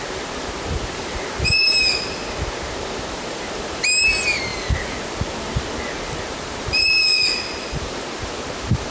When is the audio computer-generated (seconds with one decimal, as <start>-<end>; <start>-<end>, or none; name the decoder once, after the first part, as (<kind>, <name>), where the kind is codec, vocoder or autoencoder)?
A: 0.0-4.5 (vocoder, BigVGAN v2); 6.2-7.1; 7.8-8.9